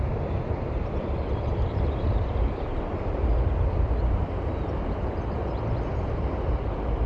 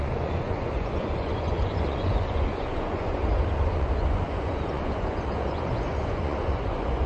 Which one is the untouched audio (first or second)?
first